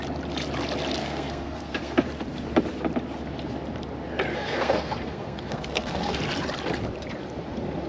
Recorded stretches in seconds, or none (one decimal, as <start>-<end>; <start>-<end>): 0.0-1.0; 2.0-4.3; 6.2-7.9